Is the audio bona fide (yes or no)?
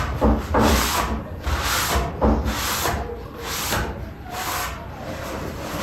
yes